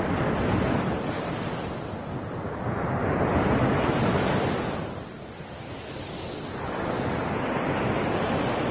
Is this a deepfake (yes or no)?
no